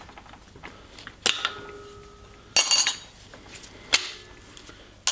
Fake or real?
real